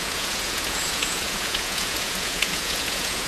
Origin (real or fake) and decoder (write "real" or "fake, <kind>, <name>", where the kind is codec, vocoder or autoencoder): fake, vocoder, Vocos